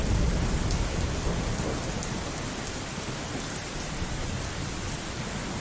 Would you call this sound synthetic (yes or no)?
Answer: no